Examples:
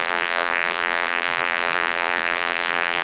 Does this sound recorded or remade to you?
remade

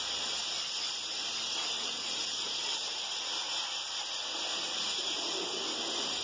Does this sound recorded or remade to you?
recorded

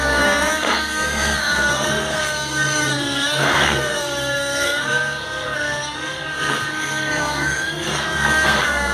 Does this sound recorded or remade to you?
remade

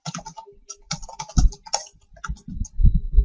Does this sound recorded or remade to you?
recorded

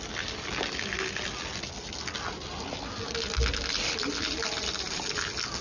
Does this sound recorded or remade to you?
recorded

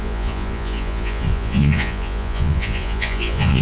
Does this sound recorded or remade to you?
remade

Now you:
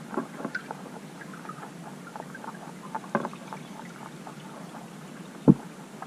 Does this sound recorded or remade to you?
recorded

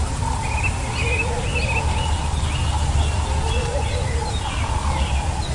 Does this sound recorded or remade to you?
recorded